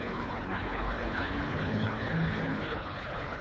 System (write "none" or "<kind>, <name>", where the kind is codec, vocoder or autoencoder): codec, HILCodec